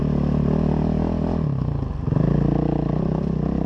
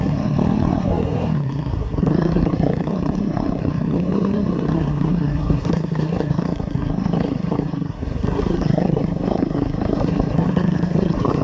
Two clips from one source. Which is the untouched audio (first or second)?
first